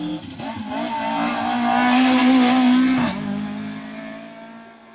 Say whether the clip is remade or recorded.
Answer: recorded